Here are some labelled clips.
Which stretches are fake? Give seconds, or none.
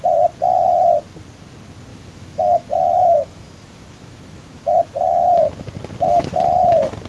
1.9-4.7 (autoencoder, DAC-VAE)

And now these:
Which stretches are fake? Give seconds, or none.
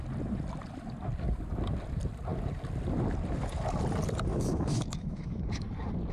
4.3-5.5 (autoencoder, DAC-VAE)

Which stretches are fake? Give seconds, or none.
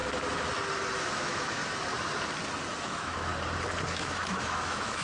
1.0-1.6 (autoencoder, DAC-VAE); 2.8-3.3; 3.9-5.0